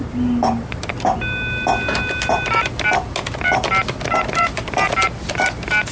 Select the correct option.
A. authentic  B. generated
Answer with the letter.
A